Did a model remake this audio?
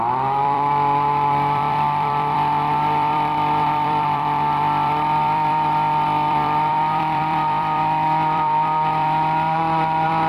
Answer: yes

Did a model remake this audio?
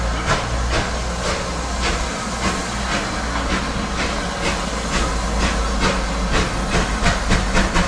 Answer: no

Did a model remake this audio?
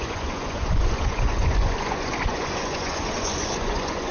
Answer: yes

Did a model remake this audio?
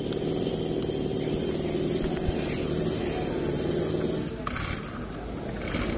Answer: no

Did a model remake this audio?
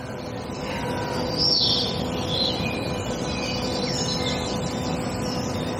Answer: no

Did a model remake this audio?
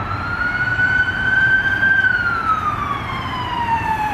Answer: yes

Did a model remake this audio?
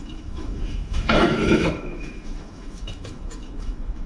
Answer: yes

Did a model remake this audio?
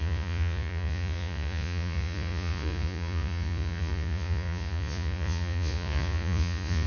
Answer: yes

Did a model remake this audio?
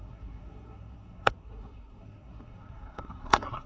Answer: yes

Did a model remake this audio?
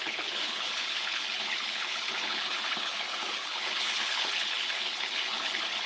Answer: yes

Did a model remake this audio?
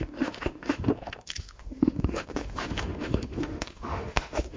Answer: yes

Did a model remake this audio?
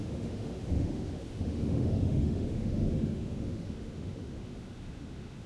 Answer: yes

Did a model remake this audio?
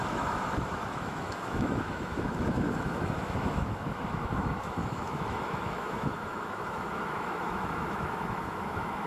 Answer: yes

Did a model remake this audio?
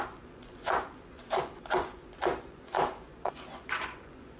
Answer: yes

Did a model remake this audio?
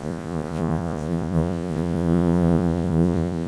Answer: yes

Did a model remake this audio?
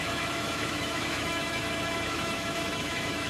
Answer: yes